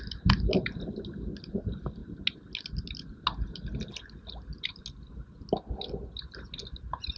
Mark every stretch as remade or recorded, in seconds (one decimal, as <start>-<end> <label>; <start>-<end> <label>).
0.0-7.2 recorded